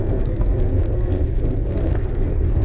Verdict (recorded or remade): remade